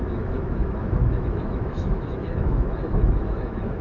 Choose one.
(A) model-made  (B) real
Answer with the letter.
A